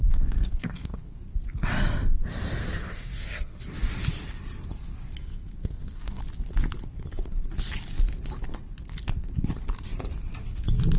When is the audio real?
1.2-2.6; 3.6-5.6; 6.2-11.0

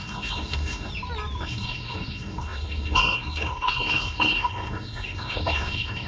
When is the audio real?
0.9-1.4